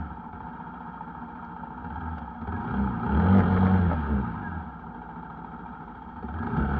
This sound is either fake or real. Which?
real